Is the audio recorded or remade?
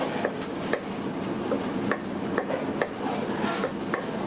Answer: recorded